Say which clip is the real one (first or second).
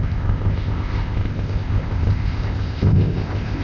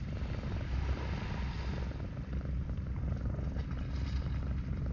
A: second